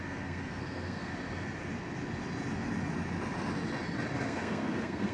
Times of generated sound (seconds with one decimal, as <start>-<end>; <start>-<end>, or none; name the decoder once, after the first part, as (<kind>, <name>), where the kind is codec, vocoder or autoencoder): 0.0-1.1 (codec, SNAC); 4.2-5.1